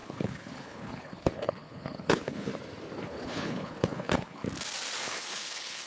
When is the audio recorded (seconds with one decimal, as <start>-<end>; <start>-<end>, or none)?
2.5-3.0; 4.4-5.0